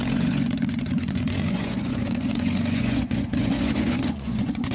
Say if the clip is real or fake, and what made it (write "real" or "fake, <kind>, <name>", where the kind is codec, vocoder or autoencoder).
fake, vocoder, Vocos